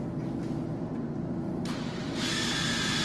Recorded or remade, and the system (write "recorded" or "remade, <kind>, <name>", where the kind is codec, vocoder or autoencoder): recorded